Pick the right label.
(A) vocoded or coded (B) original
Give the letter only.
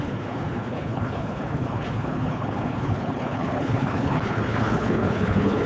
A